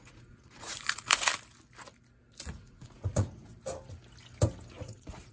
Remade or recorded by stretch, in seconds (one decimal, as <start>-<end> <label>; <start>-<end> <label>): 0.0-1.3 remade; 1.3-2.4 recorded; 2.4-3.5 remade; 3.5-4.8 recorded; 4.8-5.3 remade